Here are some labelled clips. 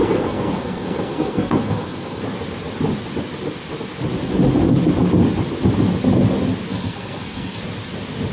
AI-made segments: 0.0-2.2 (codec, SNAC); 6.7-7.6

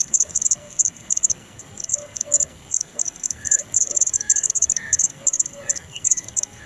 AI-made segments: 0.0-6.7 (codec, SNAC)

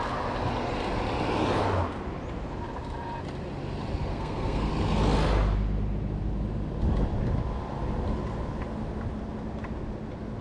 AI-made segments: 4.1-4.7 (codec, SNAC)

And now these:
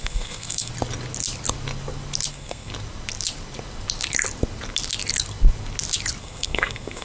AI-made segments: 0.0-0.7 (codec, SNAC); 2.3-2.7; 6.2-7.0

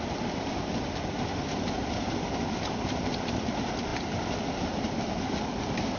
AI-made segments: none

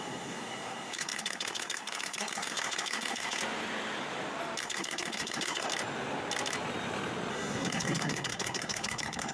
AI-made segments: 0.0-3.4 (codec, SNAC); 4.6-5.7; 7.3-9.3